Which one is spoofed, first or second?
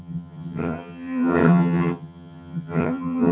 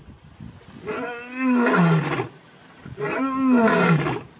first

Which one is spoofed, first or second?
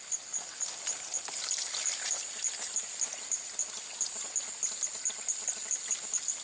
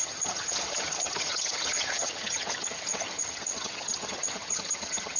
second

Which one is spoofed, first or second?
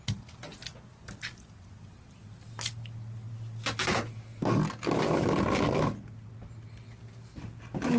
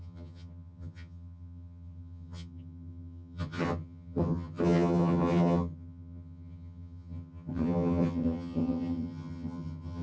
second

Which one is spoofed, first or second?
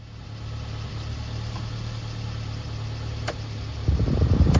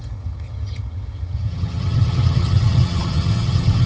second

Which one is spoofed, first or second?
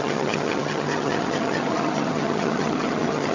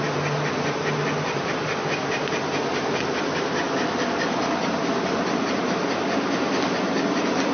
first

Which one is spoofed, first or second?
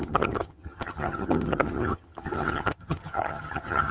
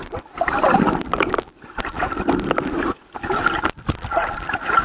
first